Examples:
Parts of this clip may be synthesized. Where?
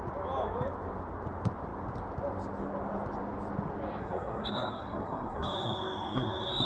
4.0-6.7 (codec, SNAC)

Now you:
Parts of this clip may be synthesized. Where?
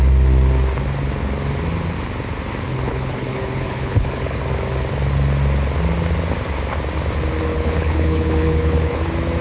2.7-4.4 (codec, HILCodec); 7.5-9.0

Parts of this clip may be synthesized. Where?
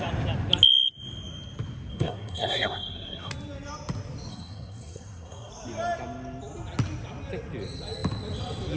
1.9-3.3 (codec, SNAC); 4.3-5.5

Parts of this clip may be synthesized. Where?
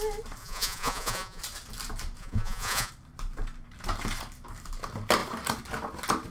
0.4-1.4 (vocoder, Vocos); 2.2-2.9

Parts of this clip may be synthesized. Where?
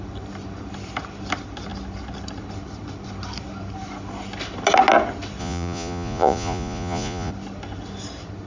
5.4-7.3 (vocoder, Vocos)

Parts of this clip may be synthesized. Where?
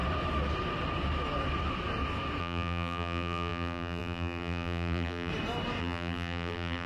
2.4-5.3 (vocoder, BigVGAN v2); 5.8-6.9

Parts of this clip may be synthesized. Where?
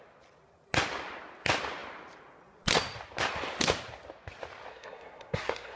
4.7-5.8 (codec, SNAC)